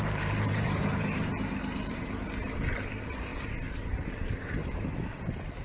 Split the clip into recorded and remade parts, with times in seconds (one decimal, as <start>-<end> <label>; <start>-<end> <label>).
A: 0.0-1.3 remade; 1.3-1.9 recorded; 1.9-5.6 remade